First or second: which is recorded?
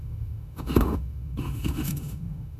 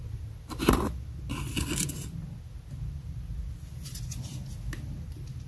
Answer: second